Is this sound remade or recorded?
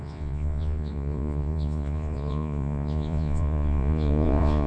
remade